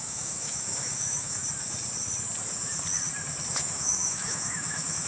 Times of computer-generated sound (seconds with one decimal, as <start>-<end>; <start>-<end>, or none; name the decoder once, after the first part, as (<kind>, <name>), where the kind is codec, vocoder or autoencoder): 0.0-1.4 (autoencoder, DAC-VAE); 3.5-5.1